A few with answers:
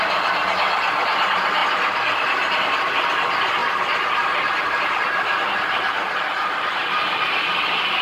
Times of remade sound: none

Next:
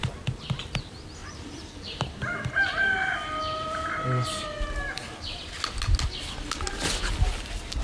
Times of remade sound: 1.2-2.2 (vocoder, BigVGAN v2)

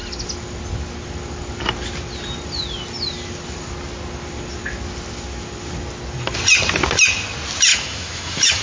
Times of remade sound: 7.7-8.6 (autoencoder, DAC-VAE)

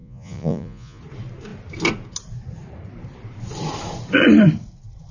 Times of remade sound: 0.0-1.0 (vocoder, Vocos)

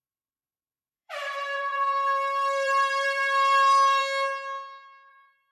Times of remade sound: 0.0-4.0 (vocoder, BigVGAN v2); 5.1-5.5

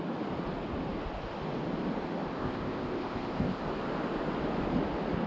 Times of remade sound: 2.4-3.6 (codec, ZipCodec)

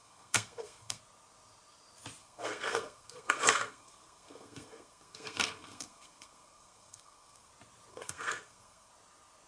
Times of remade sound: 0.0-1.0 (codec, SNAC); 2.2-7.5; 7.9-8.9